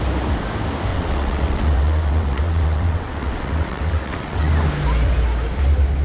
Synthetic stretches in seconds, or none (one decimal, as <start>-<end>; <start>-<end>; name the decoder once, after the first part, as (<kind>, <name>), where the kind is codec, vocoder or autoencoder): 0.9-4.5 (vocoder, WaveNeXt)

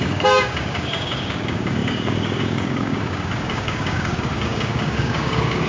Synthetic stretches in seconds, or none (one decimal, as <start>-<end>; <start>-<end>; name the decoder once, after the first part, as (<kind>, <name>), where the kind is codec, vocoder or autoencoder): 0.0-5.7 (codec, DAC)

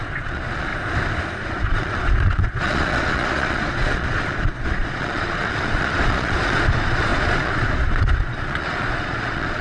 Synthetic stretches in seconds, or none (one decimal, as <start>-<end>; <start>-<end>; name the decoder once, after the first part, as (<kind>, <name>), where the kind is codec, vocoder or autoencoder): 0.0-0.7 (vocoder, Vocos); 1.4-9.6

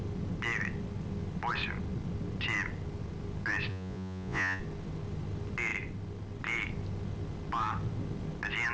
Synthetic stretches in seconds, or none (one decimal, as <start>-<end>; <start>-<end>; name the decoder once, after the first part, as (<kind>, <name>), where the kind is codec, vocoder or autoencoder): 3.7-4.6 (vocoder, Vocos)